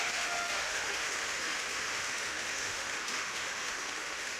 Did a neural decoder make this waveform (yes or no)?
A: yes